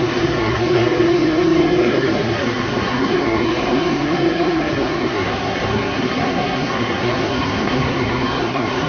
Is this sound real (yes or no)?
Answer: no